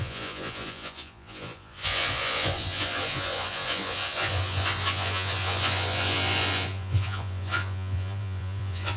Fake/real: fake